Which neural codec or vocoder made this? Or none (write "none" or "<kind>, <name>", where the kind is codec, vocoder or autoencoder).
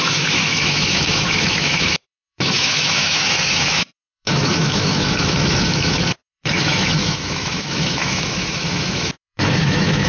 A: autoencoder, DAC-VAE